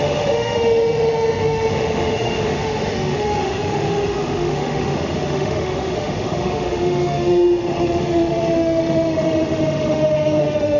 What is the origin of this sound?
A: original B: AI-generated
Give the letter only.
B